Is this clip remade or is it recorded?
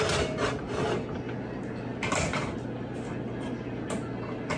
recorded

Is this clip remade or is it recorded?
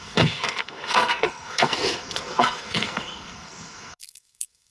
remade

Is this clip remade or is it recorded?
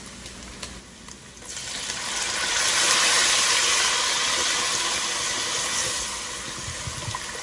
recorded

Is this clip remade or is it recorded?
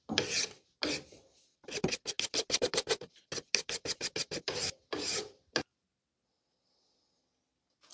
recorded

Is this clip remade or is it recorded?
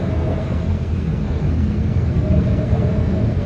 remade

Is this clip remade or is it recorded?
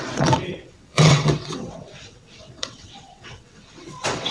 remade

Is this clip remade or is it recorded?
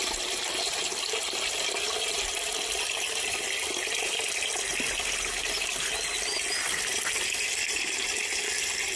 recorded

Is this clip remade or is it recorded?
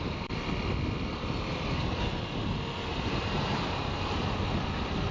recorded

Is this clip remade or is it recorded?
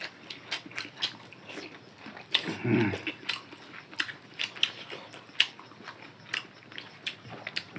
recorded